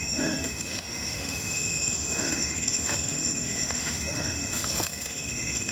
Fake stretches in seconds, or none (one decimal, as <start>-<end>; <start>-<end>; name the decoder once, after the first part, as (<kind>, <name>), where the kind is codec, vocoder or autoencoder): 0.0-5.7 (autoencoder, DAC-VAE)